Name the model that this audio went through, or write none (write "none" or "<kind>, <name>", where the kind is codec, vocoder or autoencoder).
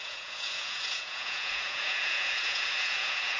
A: vocoder, Vocos